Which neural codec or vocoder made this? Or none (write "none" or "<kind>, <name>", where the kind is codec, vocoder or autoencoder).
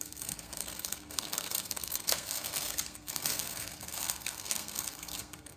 codec, SNAC